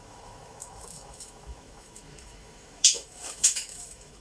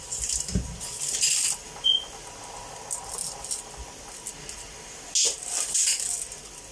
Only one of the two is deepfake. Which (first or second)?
first